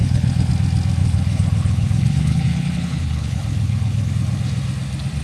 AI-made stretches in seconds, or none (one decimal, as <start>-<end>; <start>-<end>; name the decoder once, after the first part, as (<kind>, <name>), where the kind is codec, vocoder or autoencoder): 0.0-0.5 (codec, HILCodec); 1.0-4.1